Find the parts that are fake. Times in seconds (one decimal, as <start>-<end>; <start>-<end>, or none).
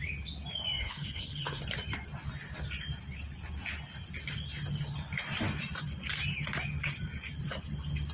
0.8-1.6